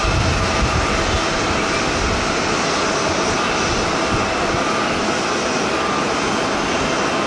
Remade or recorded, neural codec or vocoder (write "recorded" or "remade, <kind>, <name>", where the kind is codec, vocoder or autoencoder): recorded